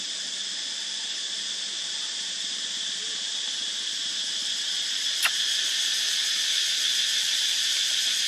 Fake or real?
fake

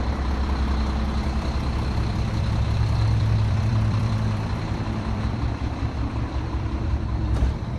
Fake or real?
fake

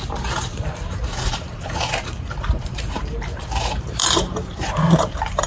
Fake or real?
fake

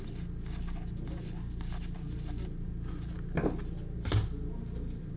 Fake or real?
real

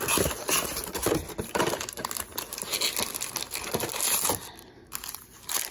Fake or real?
real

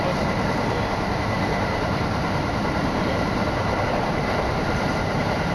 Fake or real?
fake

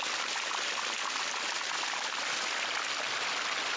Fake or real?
real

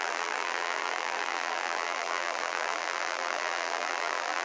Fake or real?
fake